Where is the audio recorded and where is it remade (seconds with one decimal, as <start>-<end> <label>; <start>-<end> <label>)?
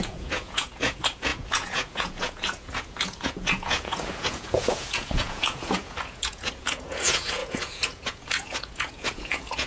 0.0-9.7 remade